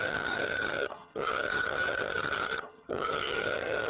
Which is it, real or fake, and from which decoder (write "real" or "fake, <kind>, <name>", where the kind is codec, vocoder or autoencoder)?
fake, vocoder, HiFi-GAN